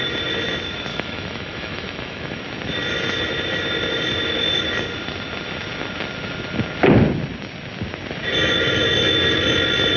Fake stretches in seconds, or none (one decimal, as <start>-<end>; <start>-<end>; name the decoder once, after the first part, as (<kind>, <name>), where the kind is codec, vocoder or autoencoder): 0.9-2.4 (autoencoder, DAC-VAE)